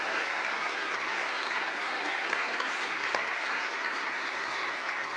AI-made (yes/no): yes